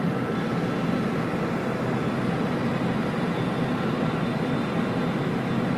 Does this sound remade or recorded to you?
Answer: recorded